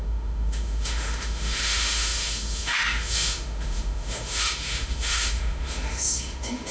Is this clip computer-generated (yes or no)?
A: yes